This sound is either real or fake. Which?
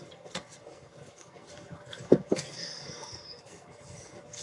fake